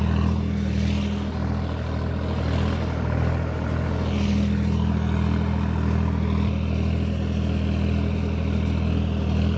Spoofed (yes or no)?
no